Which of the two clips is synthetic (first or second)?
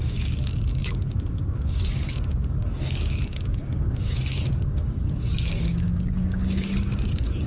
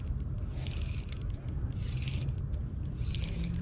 first